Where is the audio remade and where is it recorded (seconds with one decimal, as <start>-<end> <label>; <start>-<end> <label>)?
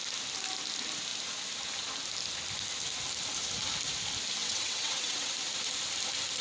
0.0-4.4 recorded; 4.4-5.3 remade; 5.3-6.4 recorded